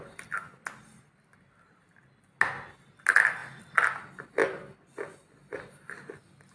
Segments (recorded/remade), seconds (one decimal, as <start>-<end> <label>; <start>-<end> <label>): 0.0-6.5 recorded